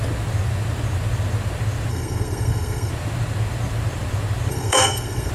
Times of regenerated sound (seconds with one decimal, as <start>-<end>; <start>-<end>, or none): 1.9-2.9; 4.5-5.3